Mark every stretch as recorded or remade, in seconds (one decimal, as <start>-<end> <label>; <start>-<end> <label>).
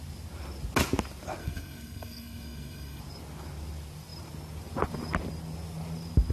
0.0-1.4 recorded; 1.4-3.0 remade; 3.0-6.3 recorded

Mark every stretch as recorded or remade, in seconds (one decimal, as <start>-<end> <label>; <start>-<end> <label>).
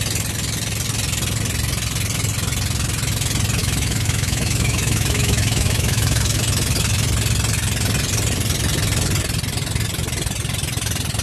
0.0-3.6 recorded; 3.6-6.4 remade; 6.4-11.2 recorded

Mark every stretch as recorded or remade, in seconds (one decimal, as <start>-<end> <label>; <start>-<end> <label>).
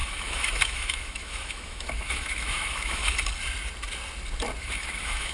0.0-3.0 remade; 3.0-4.6 recorded; 4.6-5.3 remade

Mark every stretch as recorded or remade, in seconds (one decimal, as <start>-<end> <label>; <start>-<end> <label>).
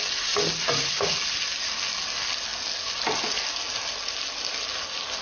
0.0-5.2 recorded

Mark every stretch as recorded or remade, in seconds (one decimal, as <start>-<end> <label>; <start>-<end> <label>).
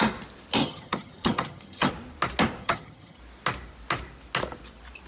0.0-0.6 recorded; 0.6-1.9 remade; 1.9-2.6 recorded; 2.6-3.2 remade; 3.2-5.1 recorded